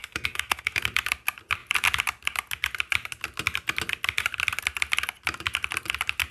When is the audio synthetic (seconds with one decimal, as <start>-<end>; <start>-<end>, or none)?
0.0-0.8